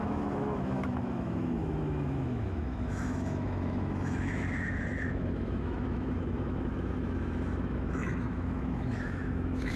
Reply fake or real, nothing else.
fake